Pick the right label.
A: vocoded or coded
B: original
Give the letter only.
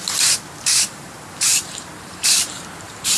A